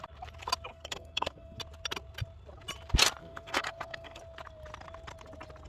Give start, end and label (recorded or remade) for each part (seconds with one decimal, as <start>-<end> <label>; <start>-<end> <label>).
0.0-0.7 recorded; 0.7-1.6 remade; 1.6-3.2 recorded; 3.2-4.2 remade; 4.2-5.7 recorded